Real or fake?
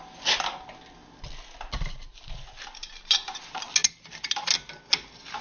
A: real